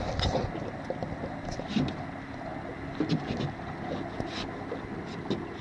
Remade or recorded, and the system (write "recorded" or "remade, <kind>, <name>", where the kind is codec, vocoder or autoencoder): recorded